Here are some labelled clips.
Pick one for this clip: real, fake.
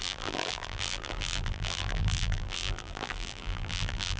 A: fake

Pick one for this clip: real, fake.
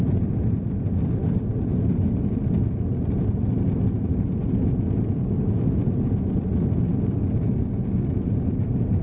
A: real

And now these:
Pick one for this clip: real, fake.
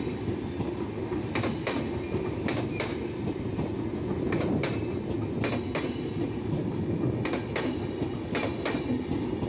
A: real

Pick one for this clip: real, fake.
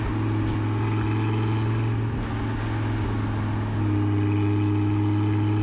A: real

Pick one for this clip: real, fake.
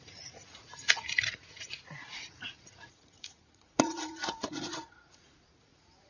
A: fake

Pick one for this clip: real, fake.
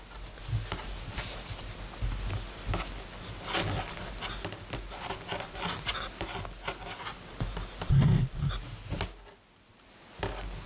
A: real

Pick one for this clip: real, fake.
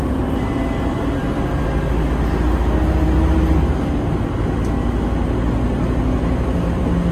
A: real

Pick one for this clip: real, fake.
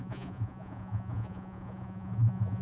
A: fake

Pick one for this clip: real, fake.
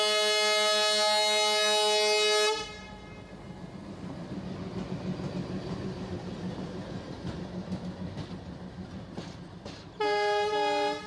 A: real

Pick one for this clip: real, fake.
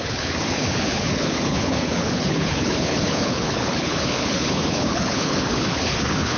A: fake